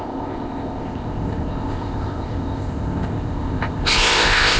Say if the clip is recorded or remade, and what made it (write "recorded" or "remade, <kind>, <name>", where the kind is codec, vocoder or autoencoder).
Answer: remade, codec, ZipCodec